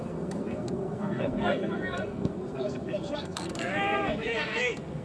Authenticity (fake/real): fake